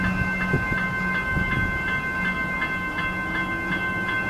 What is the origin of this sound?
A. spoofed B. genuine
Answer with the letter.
B